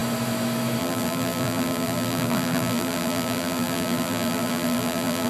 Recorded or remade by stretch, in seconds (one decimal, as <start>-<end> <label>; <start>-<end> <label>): 0.0-0.8 recorded; 0.8-5.3 remade